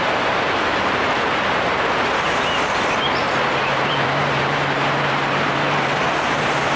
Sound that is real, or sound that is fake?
fake